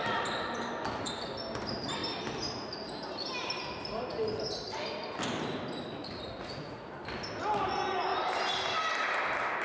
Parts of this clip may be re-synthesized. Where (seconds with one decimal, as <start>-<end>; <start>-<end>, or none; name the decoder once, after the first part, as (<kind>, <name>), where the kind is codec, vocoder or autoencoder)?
6.0-6.9 (vocoder, Vocos)